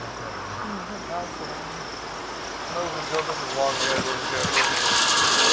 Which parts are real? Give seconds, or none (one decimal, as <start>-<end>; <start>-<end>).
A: 0.0-5.5

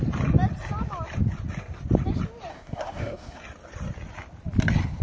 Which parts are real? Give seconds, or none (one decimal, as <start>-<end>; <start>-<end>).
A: 0.0-2.5; 3.4-5.0

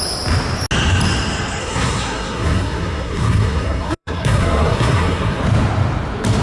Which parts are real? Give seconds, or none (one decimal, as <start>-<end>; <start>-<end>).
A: 0.0-1.6; 5.4-6.4

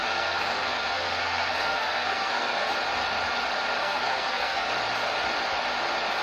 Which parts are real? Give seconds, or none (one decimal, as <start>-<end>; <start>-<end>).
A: 2.7-3.8; 4.7-6.2

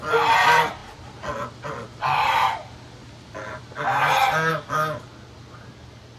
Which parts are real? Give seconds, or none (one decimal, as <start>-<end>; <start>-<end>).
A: 0.0-6.2

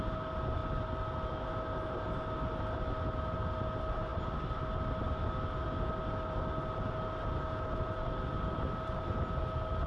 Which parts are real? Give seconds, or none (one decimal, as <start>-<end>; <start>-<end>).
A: 0.0-9.9